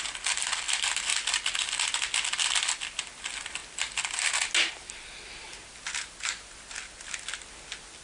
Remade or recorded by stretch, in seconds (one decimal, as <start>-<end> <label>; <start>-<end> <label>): 0.0-8.0 recorded